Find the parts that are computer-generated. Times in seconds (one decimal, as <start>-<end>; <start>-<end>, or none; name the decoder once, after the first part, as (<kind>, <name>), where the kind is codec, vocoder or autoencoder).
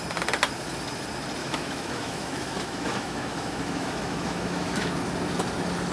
1.4-4.9 (autoencoder, DAC-VAE)